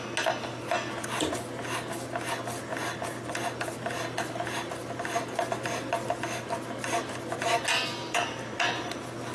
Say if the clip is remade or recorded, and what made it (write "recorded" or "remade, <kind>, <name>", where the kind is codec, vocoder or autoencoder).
recorded